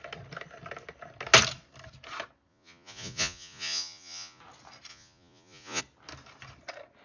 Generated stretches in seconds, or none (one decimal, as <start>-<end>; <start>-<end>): 2.5-4.4; 4.9-5.8